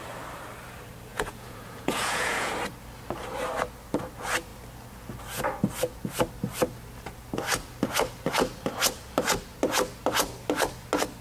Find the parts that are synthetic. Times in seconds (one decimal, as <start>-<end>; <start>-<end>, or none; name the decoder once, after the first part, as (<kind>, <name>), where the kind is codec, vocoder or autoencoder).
1.1-2.5 (vocoder, Vocos)